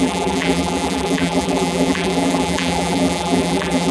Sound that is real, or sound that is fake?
fake